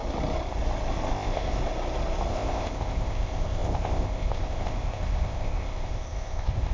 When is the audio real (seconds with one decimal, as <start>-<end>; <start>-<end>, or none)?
0.0-1.1; 1.6-2.3